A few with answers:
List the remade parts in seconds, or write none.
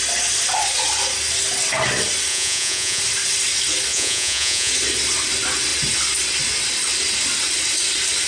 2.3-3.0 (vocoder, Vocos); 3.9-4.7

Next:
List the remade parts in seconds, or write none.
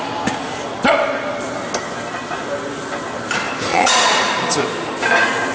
3.7-4.2 (vocoder, Vocos)